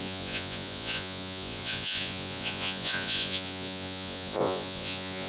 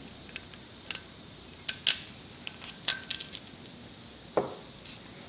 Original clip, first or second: second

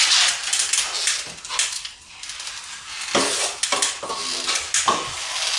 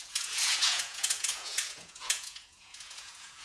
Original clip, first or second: first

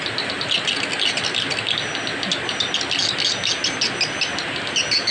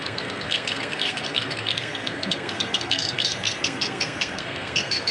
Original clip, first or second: first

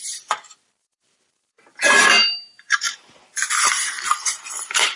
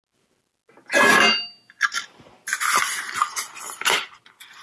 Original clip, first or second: second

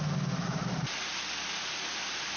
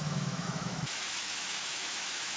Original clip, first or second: first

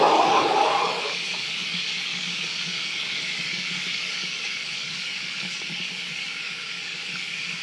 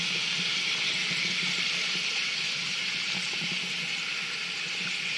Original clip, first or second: second